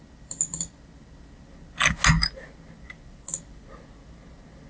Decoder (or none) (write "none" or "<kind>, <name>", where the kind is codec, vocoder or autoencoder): none